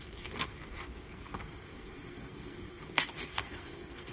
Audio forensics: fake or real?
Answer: fake